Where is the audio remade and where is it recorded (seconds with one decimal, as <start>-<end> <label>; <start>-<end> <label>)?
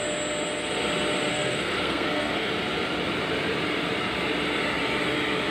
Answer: 0.0-1.3 recorded; 1.3-2.5 remade; 2.5-5.5 recorded